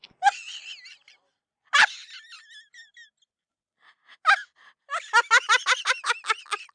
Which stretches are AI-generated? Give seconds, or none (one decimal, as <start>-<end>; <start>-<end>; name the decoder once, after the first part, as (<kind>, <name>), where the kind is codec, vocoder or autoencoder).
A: none